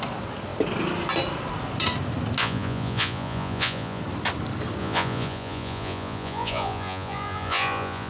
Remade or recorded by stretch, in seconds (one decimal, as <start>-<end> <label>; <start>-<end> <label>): 0.0-2.4 recorded; 2.4-4.0 remade; 4.0-4.8 recorded; 4.8-8.1 remade